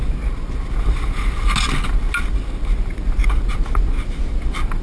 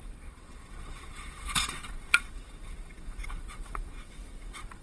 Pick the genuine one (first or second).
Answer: first